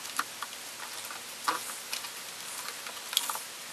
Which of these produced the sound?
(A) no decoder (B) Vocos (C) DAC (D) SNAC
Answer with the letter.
A